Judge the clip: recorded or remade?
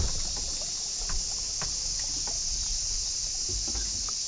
recorded